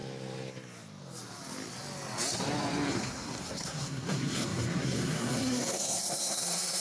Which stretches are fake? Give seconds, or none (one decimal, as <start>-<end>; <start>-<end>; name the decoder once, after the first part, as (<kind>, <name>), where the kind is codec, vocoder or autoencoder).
2.9-6.8 (codec, SNAC)